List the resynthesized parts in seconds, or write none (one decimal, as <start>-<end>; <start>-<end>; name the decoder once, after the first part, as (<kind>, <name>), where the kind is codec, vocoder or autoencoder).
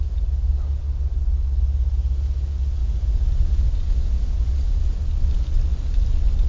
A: 2.8-4.8 (vocoder, Vocos)